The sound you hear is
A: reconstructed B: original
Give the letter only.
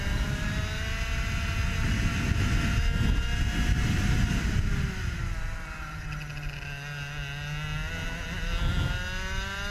B